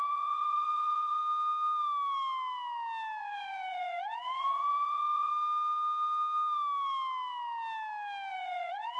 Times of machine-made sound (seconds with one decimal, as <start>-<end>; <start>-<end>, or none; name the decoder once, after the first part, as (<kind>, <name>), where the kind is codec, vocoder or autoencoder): 0.0-1.2 (vocoder, Vocos); 3.2-5.3; 8.3-9.0